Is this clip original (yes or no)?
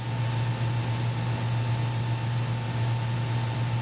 yes